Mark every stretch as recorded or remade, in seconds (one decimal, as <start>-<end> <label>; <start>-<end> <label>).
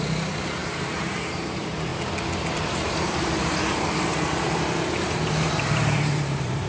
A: 0.0-1.9 remade; 1.9-2.5 recorded; 2.5-4.1 remade; 4.1-5.3 recorded; 5.3-6.7 remade